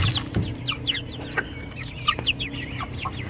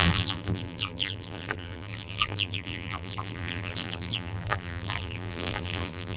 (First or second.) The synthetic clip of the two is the second